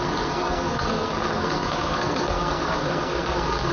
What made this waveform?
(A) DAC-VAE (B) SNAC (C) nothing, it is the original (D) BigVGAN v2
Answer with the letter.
B